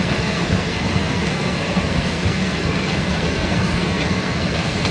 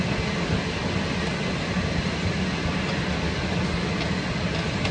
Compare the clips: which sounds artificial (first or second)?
first